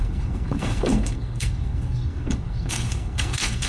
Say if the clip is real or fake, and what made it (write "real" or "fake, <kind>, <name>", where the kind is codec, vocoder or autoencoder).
fake, codec, SNAC